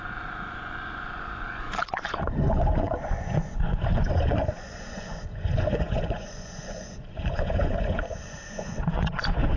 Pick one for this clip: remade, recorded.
remade